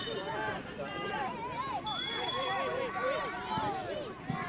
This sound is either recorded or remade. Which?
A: remade